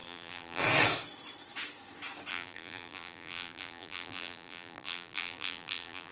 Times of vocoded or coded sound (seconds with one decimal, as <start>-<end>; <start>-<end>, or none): 0.0-0.6; 2.3-6.1